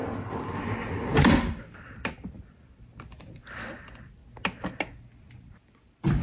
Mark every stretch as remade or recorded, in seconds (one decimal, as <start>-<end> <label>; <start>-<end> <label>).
0.0-4.2 remade; 4.2-5.4 recorded; 5.4-6.2 remade